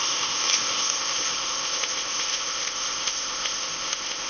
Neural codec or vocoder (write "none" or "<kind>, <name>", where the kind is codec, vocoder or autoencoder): codec, ZipCodec